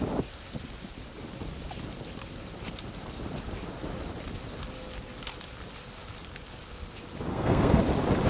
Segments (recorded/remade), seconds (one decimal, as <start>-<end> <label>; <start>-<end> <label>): 0.0-7.3 recorded; 7.3-7.8 remade; 7.8-8.3 recorded